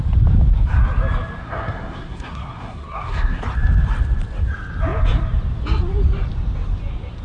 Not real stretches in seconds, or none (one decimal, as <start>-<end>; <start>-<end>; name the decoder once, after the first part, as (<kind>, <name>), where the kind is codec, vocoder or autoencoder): 1.4-3.4 (codec, SNAC)